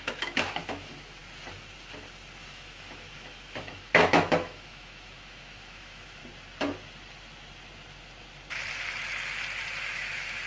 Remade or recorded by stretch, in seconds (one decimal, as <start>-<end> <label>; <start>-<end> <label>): 0.0-1.2 remade; 1.2-2.5 recorded; 2.5-6.2 remade; 6.2-9.8 recorded; 9.8-10.5 remade